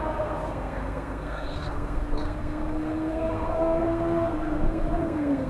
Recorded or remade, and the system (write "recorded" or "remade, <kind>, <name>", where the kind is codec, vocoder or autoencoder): remade, codec, SNAC